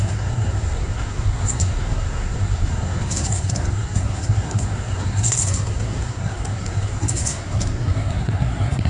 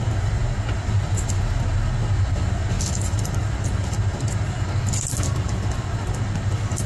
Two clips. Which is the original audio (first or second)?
second